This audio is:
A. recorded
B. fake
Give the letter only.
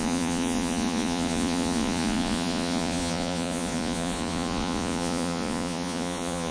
B